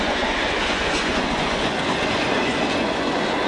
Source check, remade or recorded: remade